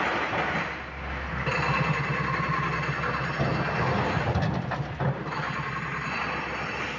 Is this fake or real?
real